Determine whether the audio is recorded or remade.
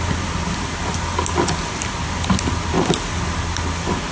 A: recorded